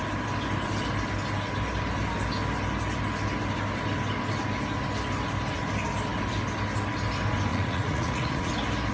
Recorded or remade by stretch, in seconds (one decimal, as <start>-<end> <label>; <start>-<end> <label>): 0.0-7.5 recorded; 7.5-8.5 remade; 8.5-8.9 recorded